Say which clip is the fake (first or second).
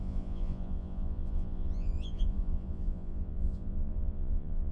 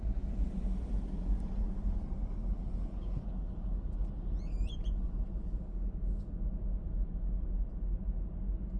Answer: first